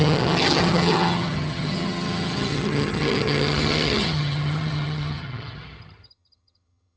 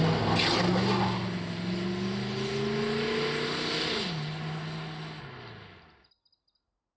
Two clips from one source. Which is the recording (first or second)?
second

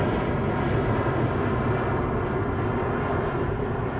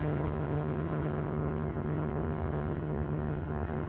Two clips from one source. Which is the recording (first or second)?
first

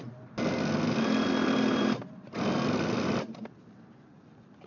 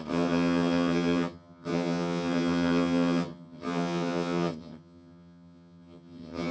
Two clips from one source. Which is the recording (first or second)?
first